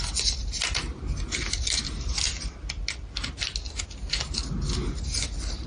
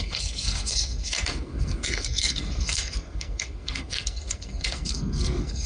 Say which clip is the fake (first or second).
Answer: second